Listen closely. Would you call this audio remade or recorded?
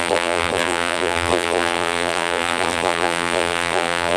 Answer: remade